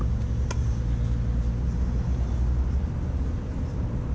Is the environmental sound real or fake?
real